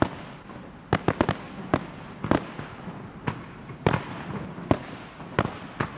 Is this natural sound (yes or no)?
yes